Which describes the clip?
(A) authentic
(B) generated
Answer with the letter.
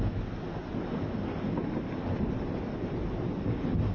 A